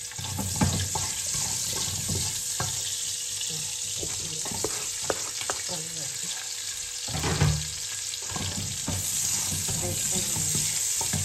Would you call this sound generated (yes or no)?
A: no